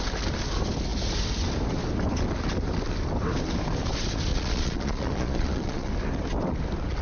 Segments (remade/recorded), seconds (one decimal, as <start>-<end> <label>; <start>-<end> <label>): 0.0-4.3 recorded; 4.3-5.9 remade; 5.9-7.0 recorded